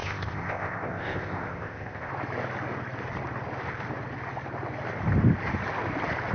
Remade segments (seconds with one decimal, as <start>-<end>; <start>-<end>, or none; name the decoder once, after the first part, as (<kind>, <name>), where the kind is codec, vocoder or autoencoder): 0.0-2.1 (codec, ZipCodec)